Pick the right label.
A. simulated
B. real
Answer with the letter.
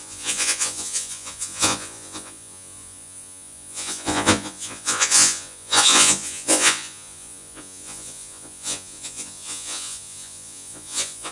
A